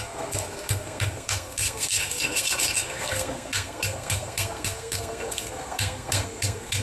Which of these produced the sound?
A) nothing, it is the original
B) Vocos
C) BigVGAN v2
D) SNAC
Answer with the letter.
D